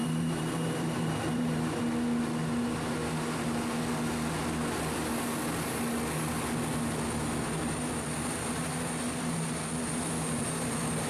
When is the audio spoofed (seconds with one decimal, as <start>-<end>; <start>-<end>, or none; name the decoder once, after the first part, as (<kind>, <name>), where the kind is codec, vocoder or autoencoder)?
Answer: 0.0-1.8 (vocoder, BigVGAN v2)